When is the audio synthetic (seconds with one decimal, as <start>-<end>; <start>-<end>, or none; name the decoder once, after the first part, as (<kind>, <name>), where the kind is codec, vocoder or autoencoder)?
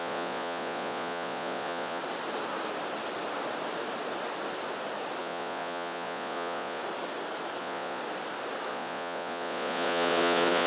0.0-2.0 (vocoder, Vocos); 5.2-6.8; 7.6-8.0; 8.7-10.7